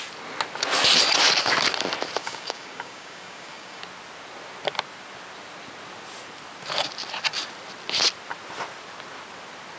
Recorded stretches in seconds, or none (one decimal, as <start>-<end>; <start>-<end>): 0.0-2.2; 3.8-9.8